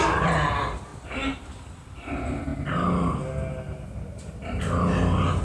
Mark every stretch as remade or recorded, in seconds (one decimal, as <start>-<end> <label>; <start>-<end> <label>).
0.0-5.4 recorded